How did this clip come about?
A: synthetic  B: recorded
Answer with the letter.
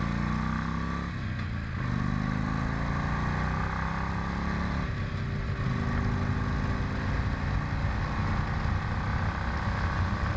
B